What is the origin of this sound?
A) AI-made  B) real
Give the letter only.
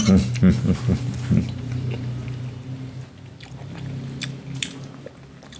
B